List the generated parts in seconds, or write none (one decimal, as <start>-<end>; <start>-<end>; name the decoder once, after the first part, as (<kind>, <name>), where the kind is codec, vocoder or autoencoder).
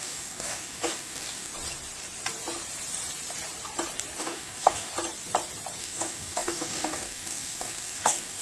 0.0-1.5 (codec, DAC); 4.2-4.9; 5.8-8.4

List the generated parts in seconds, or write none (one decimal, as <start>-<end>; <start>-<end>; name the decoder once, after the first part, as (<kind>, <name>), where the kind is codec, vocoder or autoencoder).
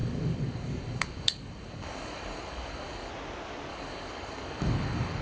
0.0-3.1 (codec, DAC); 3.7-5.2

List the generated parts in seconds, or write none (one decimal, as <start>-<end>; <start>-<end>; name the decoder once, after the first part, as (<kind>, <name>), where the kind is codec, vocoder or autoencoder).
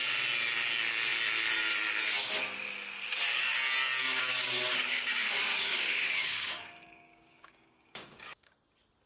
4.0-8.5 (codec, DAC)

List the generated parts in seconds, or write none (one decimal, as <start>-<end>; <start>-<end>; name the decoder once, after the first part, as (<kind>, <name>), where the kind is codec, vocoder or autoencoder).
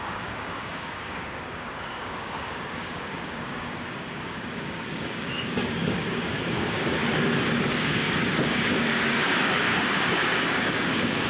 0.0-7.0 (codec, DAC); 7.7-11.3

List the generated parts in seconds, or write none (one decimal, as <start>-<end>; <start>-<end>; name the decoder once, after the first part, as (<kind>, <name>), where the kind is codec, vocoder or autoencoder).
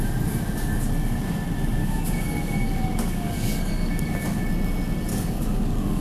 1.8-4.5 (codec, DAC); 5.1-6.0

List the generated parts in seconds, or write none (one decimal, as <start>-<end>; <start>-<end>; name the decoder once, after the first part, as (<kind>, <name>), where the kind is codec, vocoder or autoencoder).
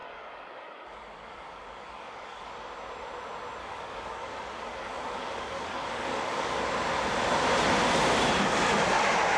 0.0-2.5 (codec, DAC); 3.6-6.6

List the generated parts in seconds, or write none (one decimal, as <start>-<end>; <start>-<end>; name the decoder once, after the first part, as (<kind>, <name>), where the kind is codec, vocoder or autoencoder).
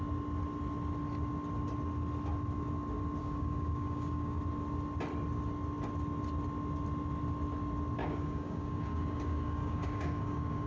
3.2-4.4 (codec, DAC); 8.0-10.7